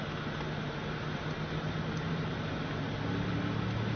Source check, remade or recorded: recorded